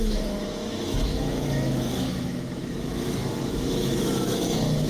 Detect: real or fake fake